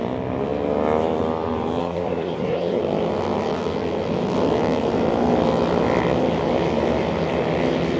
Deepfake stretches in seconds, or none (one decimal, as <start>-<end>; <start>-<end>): 1.8-2.8